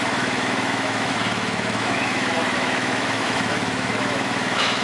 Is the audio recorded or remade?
remade